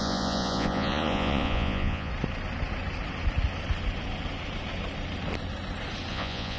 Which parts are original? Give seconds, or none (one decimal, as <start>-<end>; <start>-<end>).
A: 2.1-6.1